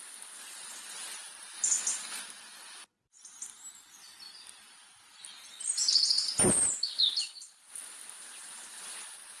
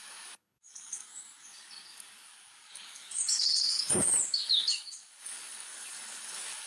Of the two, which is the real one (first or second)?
first